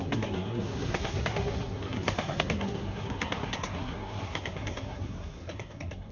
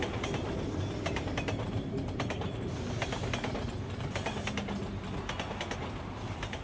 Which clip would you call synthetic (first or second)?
first